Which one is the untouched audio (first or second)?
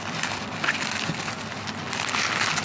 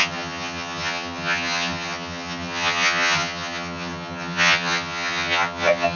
first